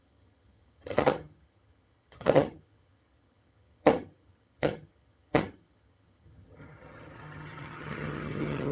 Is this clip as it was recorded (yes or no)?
no